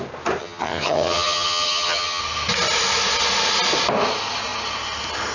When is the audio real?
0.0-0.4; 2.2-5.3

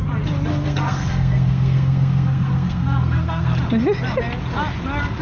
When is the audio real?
0.0-0.5; 3.6-5.2

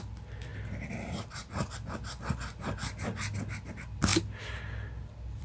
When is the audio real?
0.0-5.4

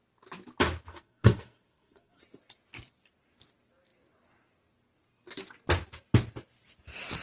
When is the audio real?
0.0-0.9; 2.2-7.2

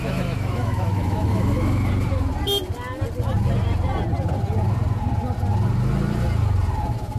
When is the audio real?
1.9-7.2

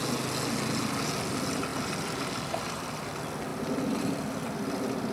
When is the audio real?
0.0-1.7; 3.0-5.1